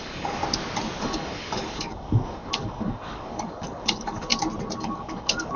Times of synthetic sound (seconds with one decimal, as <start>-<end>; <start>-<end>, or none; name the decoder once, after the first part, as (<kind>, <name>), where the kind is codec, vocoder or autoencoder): 0.0-0.4 (codec, DAC); 1.0-4.3; 4.8-5.6